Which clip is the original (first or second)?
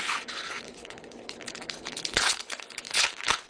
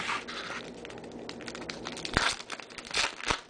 second